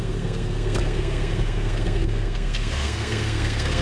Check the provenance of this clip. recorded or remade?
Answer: remade